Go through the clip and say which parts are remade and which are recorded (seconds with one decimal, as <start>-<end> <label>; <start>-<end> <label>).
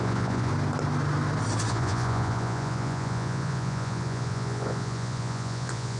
0.0-0.5 remade; 0.5-1.7 recorded; 1.7-6.0 remade